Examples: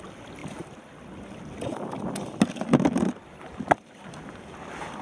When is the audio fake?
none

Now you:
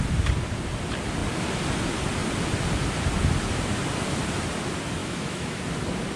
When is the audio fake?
5.0-5.6 (autoencoder, DAC-VAE)

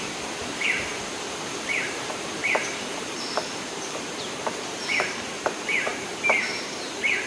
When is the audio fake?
0.0-7.3 (vocoder, BigVGAN v2)

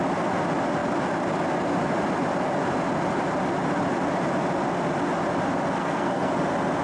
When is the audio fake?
5.8-6.3 (codec, SNAC)